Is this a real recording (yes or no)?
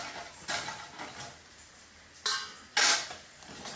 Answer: yes